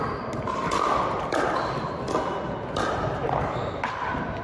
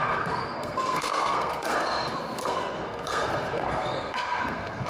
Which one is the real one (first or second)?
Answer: first